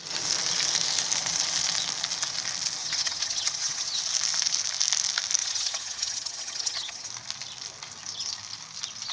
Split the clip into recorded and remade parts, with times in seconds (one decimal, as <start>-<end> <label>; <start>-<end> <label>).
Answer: 0.0-2.8 recorded; 2.8-4.0 remade; 4.0-5.4 recorded; 5.4-7.1 remade; 7.1-9.1 recorded